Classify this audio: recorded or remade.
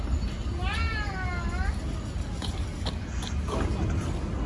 recorded